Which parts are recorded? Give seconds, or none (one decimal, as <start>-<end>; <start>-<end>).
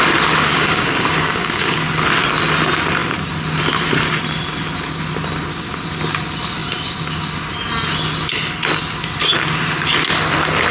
0.0-0.5; 1.8-10.7